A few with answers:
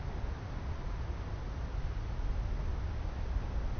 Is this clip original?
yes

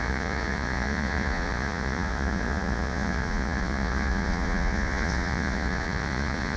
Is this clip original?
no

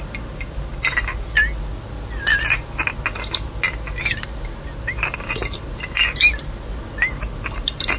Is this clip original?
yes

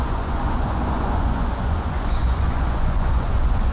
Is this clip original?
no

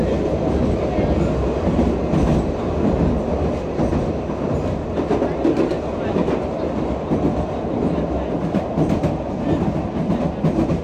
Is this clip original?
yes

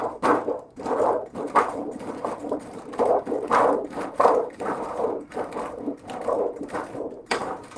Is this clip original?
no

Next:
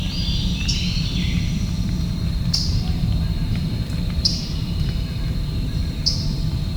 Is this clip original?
no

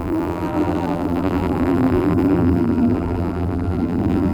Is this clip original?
no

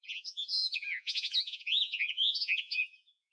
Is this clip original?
no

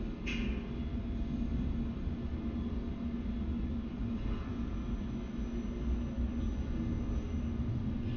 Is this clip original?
yes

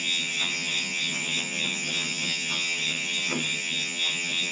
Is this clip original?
no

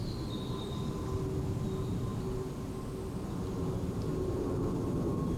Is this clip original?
yes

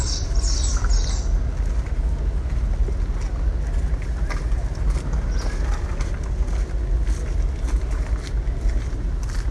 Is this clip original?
yes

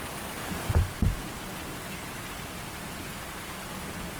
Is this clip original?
yes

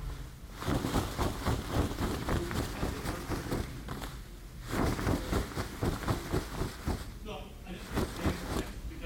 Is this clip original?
yes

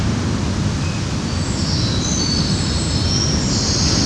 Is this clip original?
yes